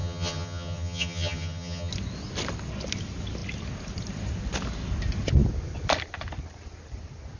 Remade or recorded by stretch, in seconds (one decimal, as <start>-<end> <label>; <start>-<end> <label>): 0.0-1.9 remade; 1.9-7.4 recorded